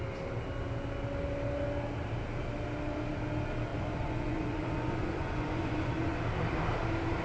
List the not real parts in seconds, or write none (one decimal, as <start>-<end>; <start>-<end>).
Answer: 3.7-5.9